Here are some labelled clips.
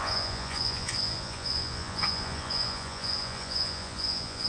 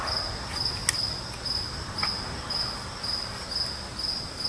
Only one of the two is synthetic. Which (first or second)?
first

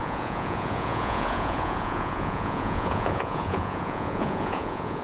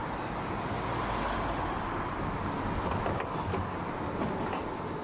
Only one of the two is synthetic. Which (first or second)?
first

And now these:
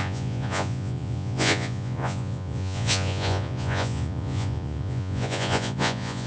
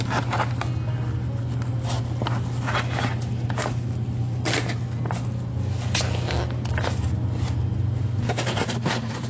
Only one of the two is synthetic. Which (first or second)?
first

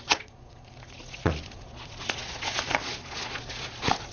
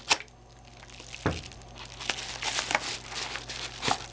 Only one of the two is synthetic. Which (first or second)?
first